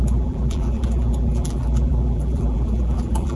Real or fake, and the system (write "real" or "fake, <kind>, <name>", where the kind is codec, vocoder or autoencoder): fake, vocoder, BigVGAN v2